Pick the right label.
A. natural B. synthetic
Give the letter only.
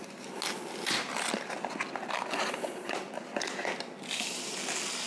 A